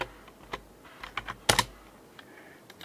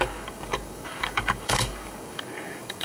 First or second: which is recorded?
first